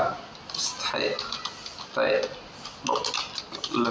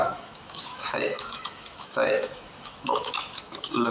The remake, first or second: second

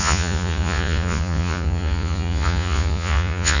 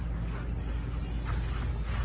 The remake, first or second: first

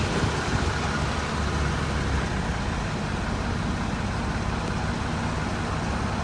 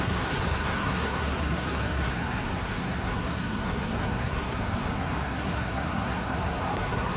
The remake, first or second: second